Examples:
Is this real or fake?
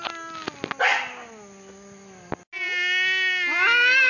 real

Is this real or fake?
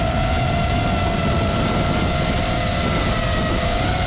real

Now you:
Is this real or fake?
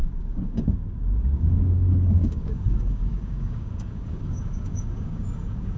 fake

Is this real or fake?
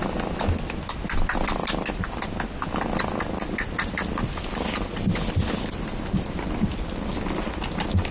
real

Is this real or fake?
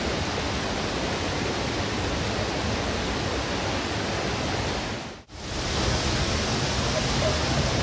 real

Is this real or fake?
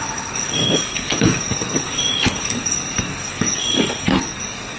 fake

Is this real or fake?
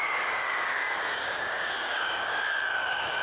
fake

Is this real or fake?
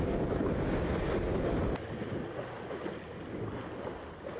real